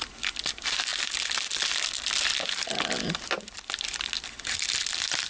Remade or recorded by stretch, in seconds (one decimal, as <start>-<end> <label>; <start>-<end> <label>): 0.0-5.3 recorded